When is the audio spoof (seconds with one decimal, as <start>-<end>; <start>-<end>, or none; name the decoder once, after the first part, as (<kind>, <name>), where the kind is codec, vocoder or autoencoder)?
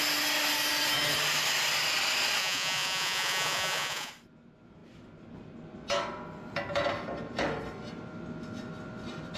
2.4-4.1 (vocoder, Vocos)